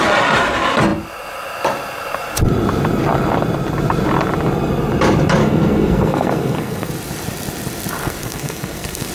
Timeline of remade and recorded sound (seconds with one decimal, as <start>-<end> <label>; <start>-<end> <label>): 0.0-5.4 recorded; 5.4-6.9 remade; 6.9-8.0 recorded; 8.0-9.1 remade